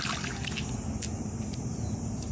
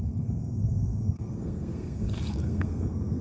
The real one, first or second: first